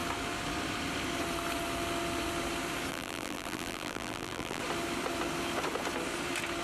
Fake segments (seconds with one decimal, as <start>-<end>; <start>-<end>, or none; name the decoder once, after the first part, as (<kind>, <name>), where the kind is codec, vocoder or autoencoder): 2.9-4.6 (vocoder, BigVGAN v2)

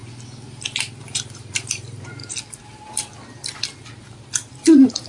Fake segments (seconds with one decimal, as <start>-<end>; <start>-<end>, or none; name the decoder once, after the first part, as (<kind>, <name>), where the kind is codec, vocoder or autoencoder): 1.0-2.2 (vocoder, BigVGAN v2)